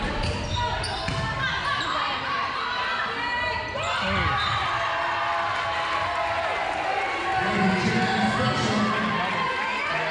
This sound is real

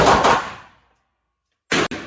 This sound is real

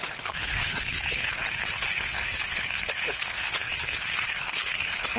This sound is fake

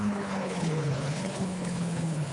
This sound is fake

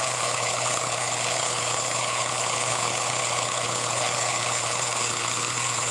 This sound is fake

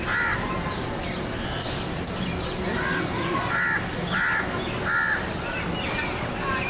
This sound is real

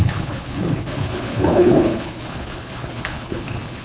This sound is fake